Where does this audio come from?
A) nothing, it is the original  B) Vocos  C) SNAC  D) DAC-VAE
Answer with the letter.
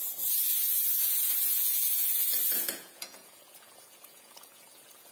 B